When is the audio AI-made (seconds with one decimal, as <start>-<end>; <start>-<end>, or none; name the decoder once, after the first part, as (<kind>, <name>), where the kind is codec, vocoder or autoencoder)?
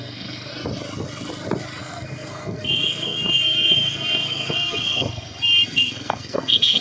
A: 0.0-0.5 (codec, SNAC); 1.8-6.8